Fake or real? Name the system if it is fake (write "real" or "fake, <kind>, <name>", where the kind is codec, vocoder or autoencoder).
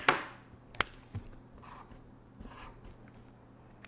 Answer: real